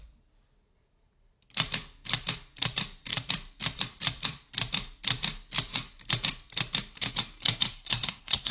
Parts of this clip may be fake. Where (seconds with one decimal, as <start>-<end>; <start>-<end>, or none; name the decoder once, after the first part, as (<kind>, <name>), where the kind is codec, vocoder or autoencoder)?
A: 7.7-8.5 (codec, SNAC)